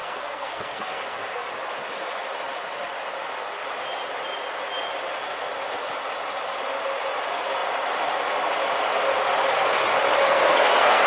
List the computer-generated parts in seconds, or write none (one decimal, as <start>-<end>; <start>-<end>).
0.0-1.5; 10.2-11.1